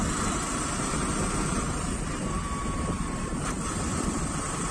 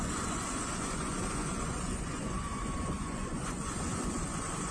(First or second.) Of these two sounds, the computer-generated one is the second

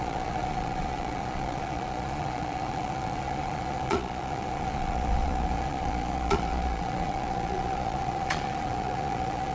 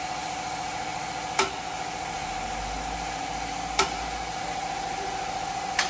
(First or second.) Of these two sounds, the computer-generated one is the first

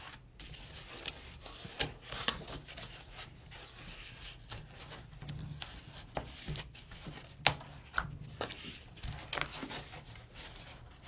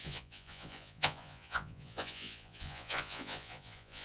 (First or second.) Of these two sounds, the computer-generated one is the second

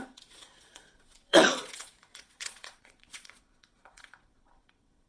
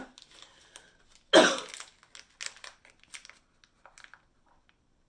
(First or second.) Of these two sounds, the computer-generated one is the first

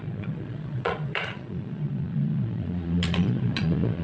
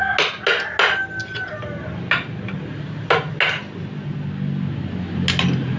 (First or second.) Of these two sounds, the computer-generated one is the first